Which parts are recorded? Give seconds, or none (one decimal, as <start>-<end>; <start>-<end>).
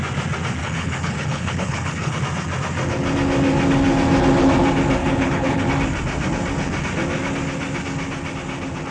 0.0-0.6; 2.2-5.0; 5.6-8.9